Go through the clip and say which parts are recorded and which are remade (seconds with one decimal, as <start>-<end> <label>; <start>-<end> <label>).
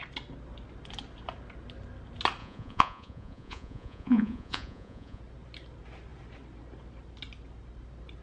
0.0-2.4 recorded; 2.4-5.2 remade; 5.2-8.2 recorded